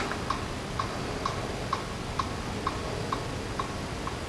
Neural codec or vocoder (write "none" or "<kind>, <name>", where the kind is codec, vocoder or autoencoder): none